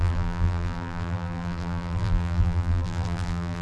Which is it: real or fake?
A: fake